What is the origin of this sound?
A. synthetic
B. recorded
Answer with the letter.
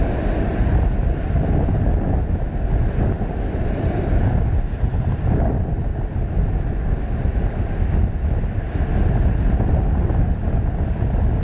B